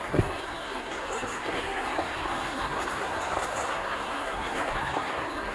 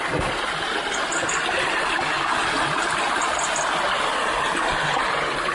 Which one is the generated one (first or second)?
first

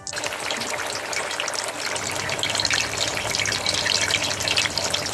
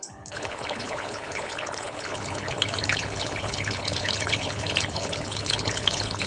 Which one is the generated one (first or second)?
second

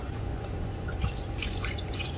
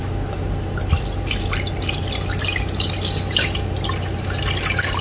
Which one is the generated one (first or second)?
first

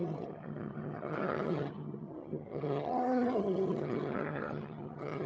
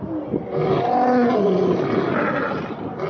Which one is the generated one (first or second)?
first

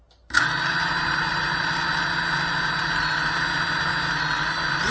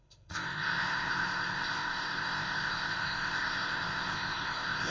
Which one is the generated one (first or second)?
second